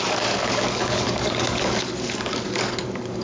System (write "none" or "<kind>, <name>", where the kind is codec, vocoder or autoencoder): codec, DAC